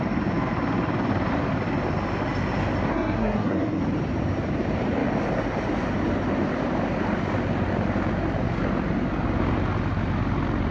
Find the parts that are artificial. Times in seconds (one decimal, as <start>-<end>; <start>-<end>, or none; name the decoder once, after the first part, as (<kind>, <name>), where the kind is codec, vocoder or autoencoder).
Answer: 2.9-3.8 (codec, SNAC)